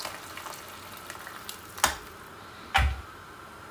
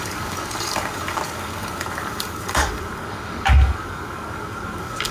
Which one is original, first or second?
first